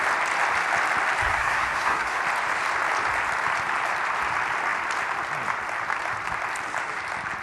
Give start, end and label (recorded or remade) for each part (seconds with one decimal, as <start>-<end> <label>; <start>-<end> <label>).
0.0-1.3 recorded; 1.3-2.2 remade; 2.2-7.4 recorded